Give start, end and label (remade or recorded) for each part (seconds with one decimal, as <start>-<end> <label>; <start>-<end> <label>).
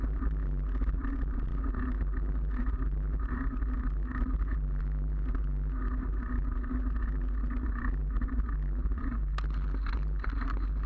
0.0-10.9 recorded